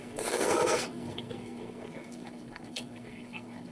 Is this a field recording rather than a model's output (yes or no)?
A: no